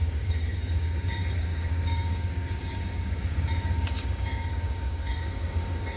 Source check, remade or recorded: remade